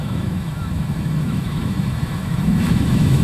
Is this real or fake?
fake